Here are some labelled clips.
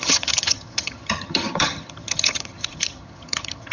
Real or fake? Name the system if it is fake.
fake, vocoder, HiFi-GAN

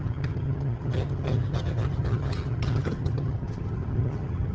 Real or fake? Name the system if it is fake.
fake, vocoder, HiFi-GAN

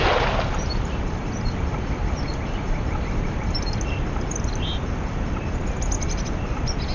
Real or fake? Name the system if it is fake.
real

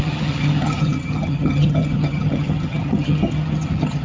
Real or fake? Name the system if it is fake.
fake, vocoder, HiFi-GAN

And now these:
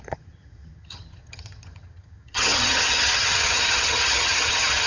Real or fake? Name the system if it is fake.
fake, vocoder, HiFi-GAN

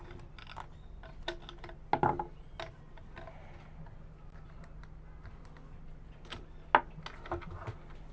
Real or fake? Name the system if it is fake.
real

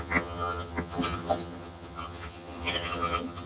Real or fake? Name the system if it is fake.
fake, vocoder, HiFi-GAN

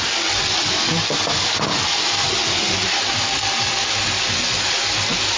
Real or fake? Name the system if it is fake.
real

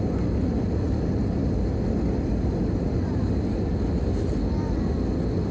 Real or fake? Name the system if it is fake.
real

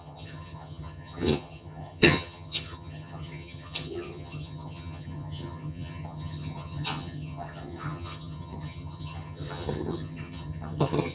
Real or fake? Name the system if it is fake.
fake, vocoder, HiFi-GAN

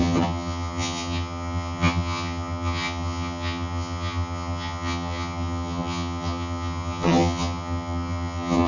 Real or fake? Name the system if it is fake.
fake, vocoder, HiFi-GAN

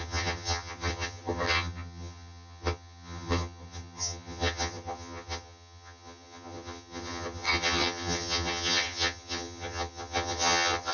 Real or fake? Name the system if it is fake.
fake, vocoder, HiFi-GAN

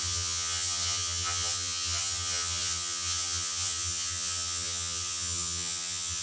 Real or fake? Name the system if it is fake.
fake, vocoder, HiFi-GAN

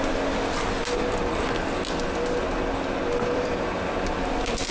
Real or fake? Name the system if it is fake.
real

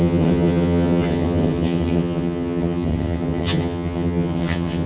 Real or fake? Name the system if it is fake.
fake, vocoder, HiFi-GAN